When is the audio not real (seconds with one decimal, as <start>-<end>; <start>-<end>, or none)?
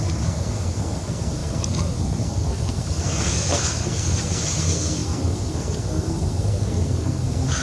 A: 0.0-7.6